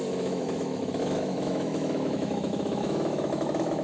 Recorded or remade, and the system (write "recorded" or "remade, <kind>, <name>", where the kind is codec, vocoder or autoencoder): remade, autoencoder, DAC-VAE